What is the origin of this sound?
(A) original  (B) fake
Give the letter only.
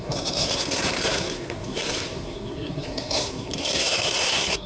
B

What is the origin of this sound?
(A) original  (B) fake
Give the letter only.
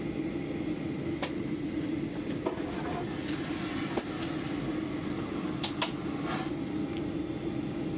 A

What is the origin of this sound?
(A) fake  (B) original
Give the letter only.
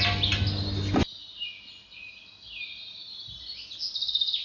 B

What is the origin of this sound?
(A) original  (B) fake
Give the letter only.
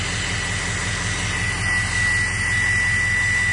A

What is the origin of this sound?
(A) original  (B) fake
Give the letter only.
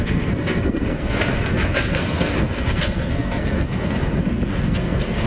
B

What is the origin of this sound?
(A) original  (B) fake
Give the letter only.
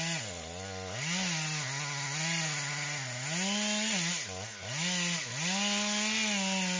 A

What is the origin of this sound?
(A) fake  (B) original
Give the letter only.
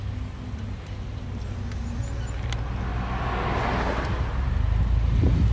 B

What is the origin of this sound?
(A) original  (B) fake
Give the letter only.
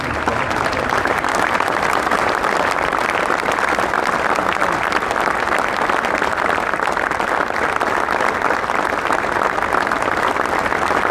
A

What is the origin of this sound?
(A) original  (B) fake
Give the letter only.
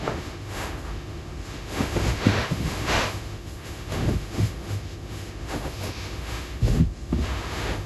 B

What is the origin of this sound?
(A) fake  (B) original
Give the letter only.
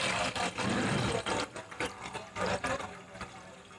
B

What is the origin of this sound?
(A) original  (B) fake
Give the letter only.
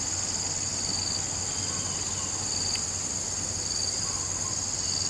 A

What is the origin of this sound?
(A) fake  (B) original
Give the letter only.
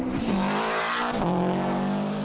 B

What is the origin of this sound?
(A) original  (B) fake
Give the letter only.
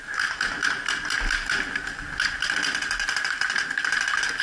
A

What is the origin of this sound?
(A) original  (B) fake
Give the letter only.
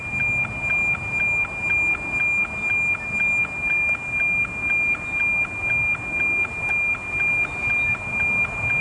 A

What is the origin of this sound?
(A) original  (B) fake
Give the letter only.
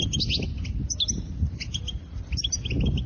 A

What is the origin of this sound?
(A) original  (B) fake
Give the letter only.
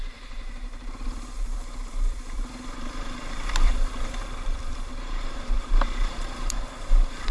B